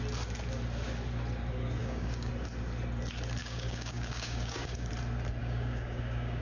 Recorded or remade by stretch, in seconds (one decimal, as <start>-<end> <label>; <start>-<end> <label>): 0.0-1.8 recorded; 1.8-2.3 remade; 2.3-3.4 recorded; 3.4-4.9 remade; 4.9-5.4 recorded; 5.4-6.4 remade

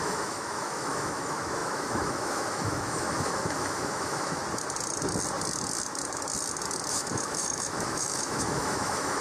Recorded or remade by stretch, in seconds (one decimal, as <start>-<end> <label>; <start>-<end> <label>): 0.0-4.4 remade; 4.4-6.9 recorded; 6.9-9.2 remade